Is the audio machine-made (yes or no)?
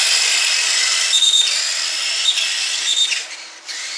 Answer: no